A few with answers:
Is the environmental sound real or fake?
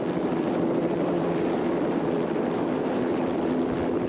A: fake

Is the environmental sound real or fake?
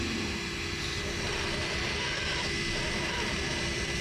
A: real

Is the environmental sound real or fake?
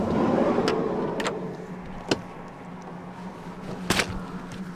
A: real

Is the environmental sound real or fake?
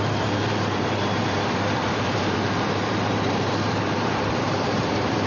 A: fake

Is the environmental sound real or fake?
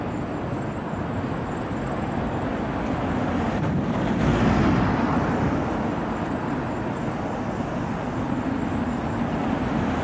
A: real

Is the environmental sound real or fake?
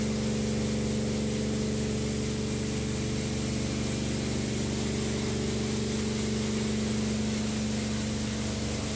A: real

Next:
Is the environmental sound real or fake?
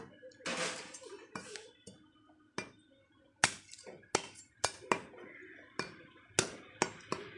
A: real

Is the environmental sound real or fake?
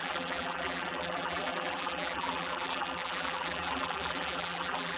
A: fake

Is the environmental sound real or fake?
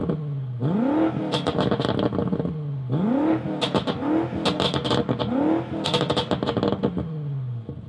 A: real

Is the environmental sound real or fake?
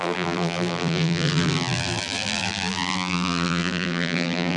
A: fake